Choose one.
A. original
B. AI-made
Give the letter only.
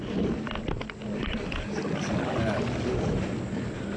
A